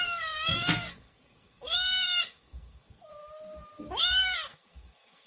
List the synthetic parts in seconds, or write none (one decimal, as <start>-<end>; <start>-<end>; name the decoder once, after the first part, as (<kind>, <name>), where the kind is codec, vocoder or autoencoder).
0.0-3.1 (codec, SNAC); 4.0-5.3